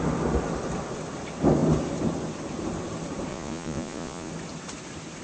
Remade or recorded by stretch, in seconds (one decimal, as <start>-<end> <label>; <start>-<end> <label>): 0.0-3.3 recorded; 3.3-4.3 remade; 4.3-5.2 recorded

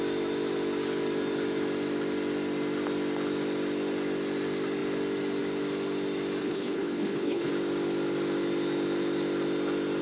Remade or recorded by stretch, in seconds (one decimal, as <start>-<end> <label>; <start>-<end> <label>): 0.0-6.4 recorded; 6.4-7.5 remade; 7.5-10.0 recorded

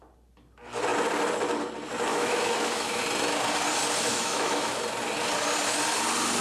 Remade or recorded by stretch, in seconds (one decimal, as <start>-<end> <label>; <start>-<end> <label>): 0.0-2.1 recorded; 2.1-3.0 remade; 3.0-4.1 recorded; 4.1-4.7 remade; 4.7-6.4 recorded

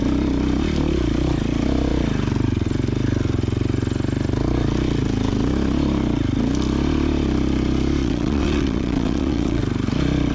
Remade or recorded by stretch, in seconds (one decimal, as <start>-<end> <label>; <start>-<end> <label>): 0.0-8.0 recorded; 8.0-9.6 remade; 9.6-10.3 recorded

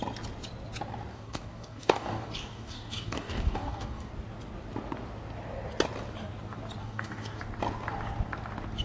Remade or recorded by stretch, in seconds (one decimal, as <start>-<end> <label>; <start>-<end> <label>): 0.0-1.1 recorded; 1.1-4.1 remade; 4.1-6.8 recorded; 6.8-7.4 remade; 7.4-8.8 recorded

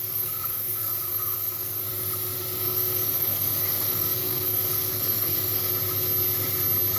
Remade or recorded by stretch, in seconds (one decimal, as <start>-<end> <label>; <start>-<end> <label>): 0.0-1.8 remade; 1.8-2.6 recorded; 2.6-5.7 remade; 5.7-7.0 recorded

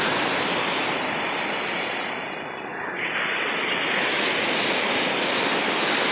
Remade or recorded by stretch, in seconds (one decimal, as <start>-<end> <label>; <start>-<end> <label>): 0.0-2.7 recorded; 2.7-3.6 remade; 3.6-6.1 recorded